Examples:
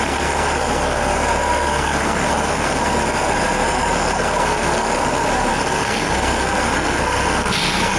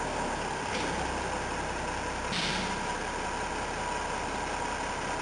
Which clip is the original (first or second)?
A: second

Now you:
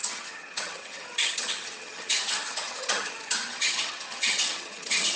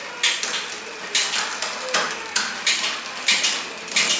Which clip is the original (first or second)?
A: second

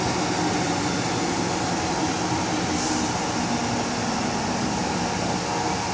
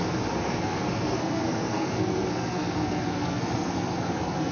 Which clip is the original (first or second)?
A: first